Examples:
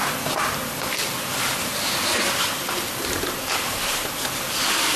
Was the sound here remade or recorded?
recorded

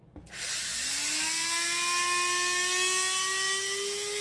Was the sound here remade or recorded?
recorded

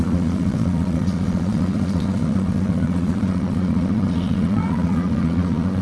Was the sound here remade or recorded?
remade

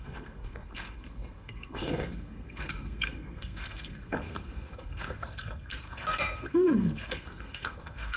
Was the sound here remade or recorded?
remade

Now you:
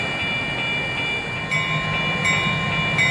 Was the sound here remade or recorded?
recorded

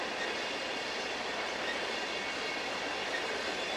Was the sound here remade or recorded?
recorded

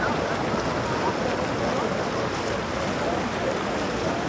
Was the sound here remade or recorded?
recorded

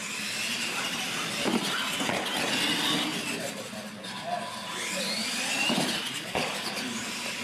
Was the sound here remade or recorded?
recorded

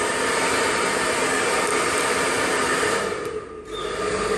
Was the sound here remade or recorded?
recorded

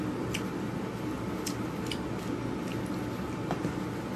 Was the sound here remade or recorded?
recorded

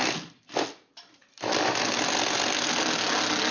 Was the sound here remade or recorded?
recorded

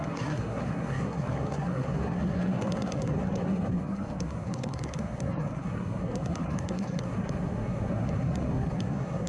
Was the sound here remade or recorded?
remade